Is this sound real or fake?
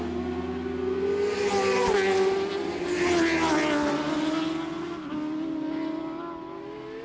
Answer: real